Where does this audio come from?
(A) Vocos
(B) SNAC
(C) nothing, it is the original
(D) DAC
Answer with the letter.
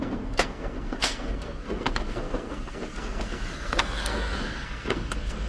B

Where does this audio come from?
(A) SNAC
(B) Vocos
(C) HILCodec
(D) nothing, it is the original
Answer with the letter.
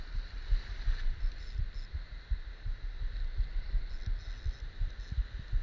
D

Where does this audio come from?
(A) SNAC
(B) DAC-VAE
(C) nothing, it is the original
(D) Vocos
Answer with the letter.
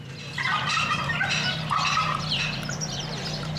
C